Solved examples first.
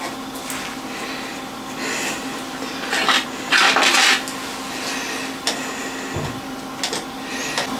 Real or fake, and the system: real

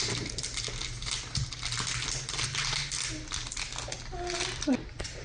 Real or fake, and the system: real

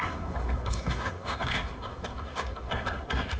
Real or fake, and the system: fake, codec, SNAC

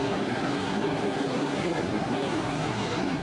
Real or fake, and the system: fake, codec, SNAC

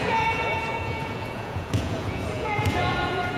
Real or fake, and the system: fake, vocoder, Vocos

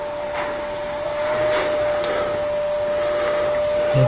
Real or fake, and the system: real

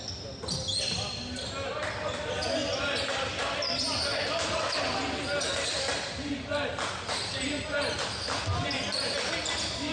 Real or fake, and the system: real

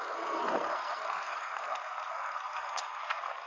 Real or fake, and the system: fake, codec, SNAC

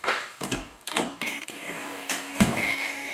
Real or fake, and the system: fake, codec, DAC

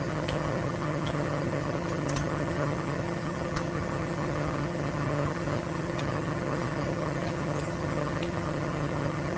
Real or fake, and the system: fake, vocoder, HiFi-GAN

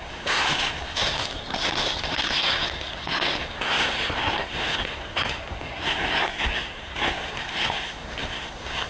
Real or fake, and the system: fake, codec, SNAC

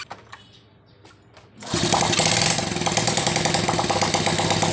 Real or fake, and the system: real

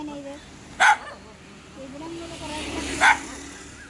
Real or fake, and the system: real